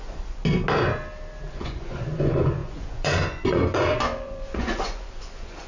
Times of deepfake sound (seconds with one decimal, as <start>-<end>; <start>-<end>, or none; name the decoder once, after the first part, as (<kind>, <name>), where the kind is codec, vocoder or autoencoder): 0.0-0.4 (vocoder, Vocos); 1.5-5.7